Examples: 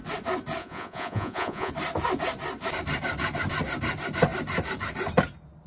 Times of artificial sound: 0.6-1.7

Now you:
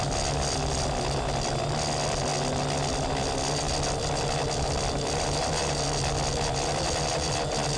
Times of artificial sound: none